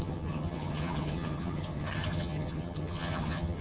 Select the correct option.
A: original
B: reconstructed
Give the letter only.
B